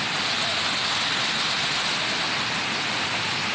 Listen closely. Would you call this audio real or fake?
real